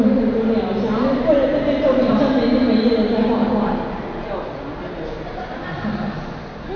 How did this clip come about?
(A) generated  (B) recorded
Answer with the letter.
B